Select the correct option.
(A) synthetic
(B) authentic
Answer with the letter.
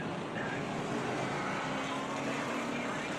B